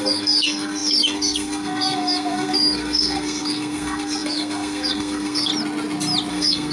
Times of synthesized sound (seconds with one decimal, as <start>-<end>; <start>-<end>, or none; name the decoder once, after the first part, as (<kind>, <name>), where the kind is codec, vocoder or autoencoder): 0.0-5.5 (codec, SNAC); 6.3-6.7